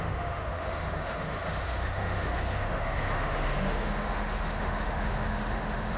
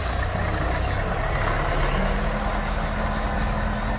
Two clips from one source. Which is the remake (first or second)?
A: first